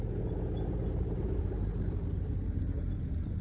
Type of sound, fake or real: real